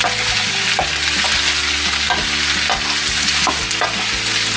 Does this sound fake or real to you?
real